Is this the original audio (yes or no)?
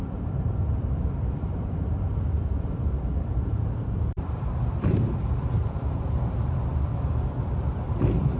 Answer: no